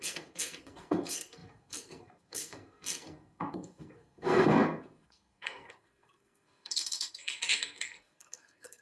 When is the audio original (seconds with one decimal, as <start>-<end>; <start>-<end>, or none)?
none